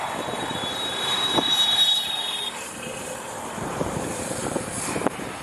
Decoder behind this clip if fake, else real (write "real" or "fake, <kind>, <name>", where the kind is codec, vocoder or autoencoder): fake, vocoder, BigVGAN v2